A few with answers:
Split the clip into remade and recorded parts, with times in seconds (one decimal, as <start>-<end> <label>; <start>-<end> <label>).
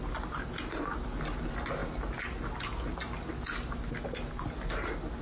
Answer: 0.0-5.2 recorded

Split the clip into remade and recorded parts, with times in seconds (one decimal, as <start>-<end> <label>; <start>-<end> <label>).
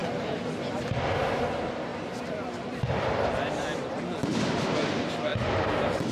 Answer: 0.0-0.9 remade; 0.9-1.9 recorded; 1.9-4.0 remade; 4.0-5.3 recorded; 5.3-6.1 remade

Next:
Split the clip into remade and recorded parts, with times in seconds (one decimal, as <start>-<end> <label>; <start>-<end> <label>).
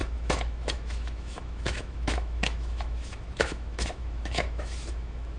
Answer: 0.0-5.4 remade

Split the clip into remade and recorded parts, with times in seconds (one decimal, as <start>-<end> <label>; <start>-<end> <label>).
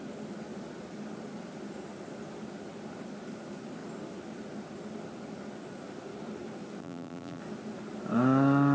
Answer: 0.0-6.8 recorded; 6.8-7.4 remade; 7.4-8.7 recorded